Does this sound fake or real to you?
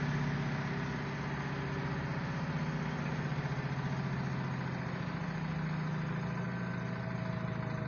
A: real